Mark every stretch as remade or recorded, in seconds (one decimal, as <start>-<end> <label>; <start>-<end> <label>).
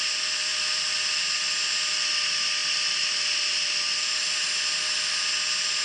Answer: 0.0-5.8 recorded